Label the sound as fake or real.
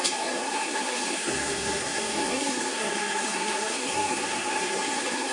fake